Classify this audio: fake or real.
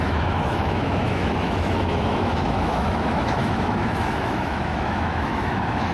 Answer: fake